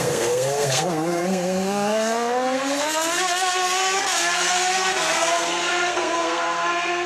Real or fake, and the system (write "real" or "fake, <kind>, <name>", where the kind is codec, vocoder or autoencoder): fake, codec, SNAC